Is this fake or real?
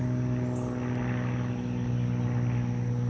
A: real